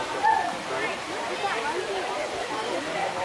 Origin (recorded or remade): recorded